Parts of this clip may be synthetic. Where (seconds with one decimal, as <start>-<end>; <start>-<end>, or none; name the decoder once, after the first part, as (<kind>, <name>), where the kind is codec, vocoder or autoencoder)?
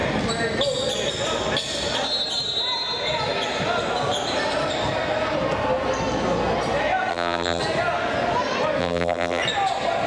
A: 7.1-7.6 (vocoder, BigVGAN v2); 8.8-9.4